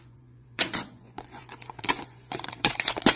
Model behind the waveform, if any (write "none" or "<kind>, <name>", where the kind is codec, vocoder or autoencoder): vocoder, Vocos